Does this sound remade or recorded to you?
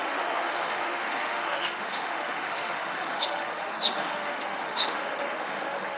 remade